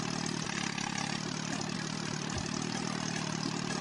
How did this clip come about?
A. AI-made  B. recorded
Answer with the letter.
B